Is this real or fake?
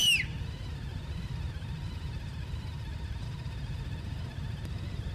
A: fake